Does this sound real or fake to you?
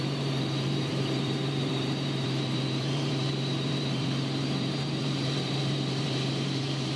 fake